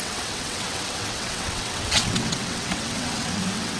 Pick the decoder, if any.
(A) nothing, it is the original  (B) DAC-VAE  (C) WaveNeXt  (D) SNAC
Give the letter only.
C